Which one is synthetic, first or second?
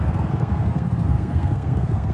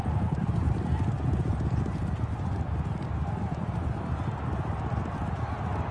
first